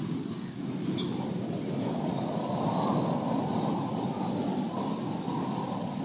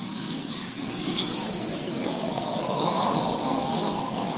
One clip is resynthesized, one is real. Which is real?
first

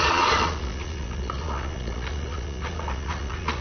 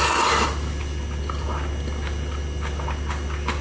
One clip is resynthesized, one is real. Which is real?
second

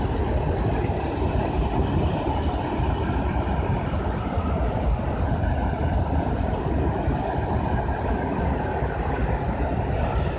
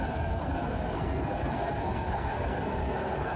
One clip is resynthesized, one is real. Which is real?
first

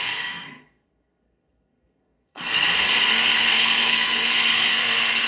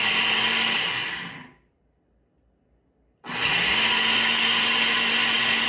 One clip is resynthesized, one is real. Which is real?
second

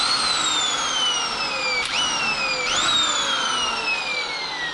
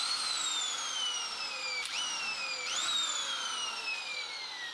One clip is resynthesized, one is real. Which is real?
first